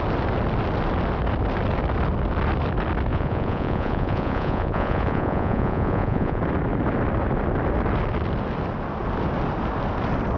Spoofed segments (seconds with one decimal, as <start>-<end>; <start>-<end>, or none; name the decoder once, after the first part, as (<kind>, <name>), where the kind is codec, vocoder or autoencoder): 3.1-6.4 (vocoder, Vocos)

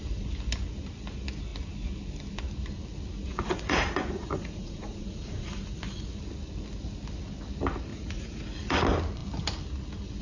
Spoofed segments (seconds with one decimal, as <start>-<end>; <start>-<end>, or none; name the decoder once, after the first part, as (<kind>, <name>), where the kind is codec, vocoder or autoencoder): 3.3-6.2 (vocoder, Vocos); 7.9-8.4

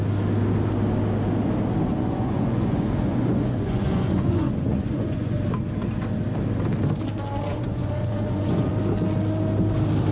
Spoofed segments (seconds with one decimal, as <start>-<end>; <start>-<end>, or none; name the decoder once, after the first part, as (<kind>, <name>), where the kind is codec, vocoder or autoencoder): 1.9-5.4 (vocoder, Vocos); 7.5-8.7

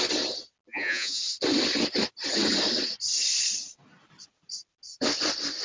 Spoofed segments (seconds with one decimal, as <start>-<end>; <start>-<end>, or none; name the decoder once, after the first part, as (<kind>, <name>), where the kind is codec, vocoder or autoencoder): 0.7-1.2 (vocoder, Vocos)

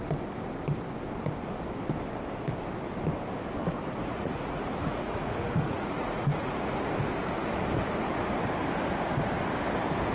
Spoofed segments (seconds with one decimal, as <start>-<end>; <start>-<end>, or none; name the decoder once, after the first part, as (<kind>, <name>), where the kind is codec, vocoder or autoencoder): 3.6-6.9 (vocoder, Vocos)

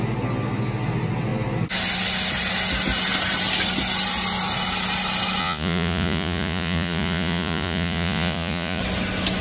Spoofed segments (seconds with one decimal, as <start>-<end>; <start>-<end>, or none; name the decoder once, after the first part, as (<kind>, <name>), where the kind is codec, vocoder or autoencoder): 5.4-8.8 (vocoder, Vocos)